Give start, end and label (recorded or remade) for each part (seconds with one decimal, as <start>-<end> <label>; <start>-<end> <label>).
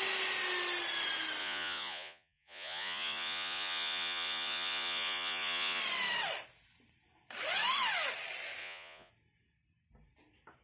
0.0-1.4 recorded; 1.4-5.8 remade; 5.8-8.6 recorded; 8.6-9.1 remade; 9.1-10.6 recorded